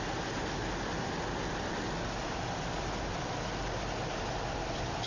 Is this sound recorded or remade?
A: recorded